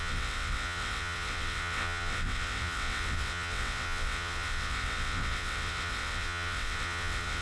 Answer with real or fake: fake